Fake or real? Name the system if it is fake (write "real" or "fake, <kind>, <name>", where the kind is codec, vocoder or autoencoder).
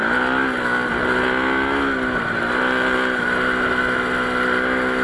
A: real